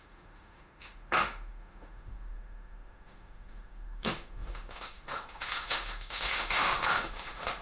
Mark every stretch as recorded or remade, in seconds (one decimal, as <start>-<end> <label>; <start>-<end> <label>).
0.0-7.6 remade